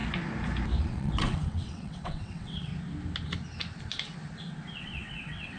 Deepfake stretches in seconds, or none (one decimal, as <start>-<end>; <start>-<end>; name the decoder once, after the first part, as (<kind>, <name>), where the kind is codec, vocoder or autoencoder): 0.8-2.7 (vocoder, WaveNeXt); 4.8-5.6